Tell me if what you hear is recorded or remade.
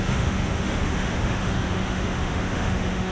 remade